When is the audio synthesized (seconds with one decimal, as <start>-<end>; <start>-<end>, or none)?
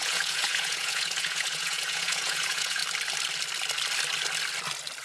0.0-2.8